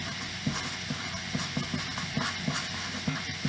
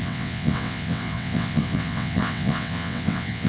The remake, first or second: second